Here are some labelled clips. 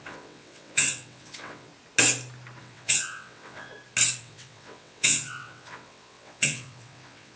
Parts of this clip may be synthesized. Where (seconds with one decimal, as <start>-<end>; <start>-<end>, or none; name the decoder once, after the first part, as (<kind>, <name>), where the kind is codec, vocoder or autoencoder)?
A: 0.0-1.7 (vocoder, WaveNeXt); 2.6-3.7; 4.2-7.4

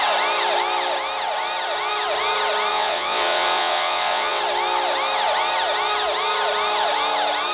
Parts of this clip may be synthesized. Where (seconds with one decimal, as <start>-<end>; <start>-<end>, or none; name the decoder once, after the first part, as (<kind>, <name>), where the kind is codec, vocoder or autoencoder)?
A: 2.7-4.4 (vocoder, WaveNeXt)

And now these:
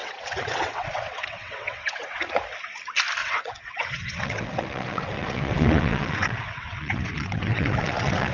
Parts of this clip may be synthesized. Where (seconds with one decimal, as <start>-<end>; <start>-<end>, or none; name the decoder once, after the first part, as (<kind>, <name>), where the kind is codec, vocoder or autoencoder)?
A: 0.0-2.3 (vocoder, WaveNeXt); 3.2-8.3

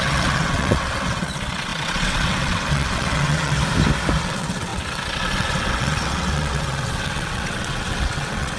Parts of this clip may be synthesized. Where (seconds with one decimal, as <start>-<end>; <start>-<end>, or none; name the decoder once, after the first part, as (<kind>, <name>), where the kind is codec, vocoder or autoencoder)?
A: 0.0-3.6 (vocoder, WaveNeXt); 4.2-8.6

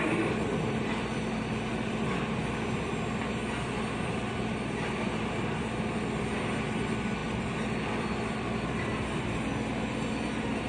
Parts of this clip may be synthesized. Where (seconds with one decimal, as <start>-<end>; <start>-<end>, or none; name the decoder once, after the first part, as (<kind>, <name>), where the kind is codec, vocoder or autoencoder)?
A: none

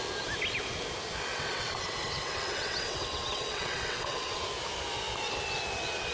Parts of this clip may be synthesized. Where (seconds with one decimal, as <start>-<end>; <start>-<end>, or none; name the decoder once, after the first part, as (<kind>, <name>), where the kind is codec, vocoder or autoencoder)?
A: 1.3-4.4 (vocoder, WaveNeXt)

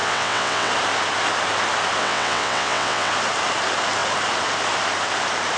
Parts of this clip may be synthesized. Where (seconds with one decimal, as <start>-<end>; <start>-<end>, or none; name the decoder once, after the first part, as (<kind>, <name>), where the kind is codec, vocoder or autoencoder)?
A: 0.0-0.7 (vocoder, WaveNeXt); 2.0-3.1